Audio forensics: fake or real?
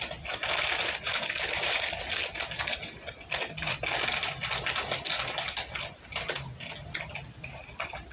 real